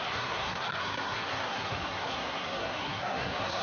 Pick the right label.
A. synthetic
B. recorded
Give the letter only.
A